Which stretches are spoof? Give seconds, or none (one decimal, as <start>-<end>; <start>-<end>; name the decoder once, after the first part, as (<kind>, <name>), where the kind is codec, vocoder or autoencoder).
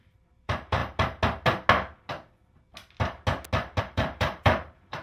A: 0.0-0.8 (vocoder, BigVGAN v2); 3.8-5.0